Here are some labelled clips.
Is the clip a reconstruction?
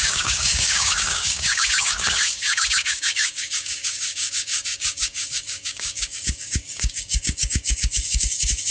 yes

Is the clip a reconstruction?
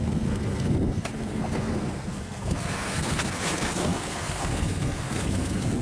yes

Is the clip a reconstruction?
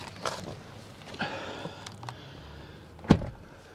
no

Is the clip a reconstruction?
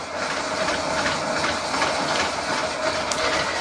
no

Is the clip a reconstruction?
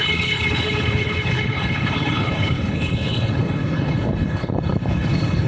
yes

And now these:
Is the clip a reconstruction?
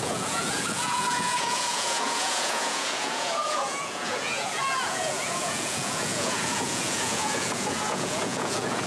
yes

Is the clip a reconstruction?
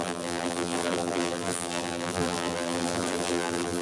yes